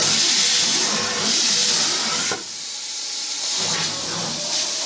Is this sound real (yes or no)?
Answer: yes